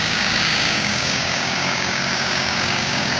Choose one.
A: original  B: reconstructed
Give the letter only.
B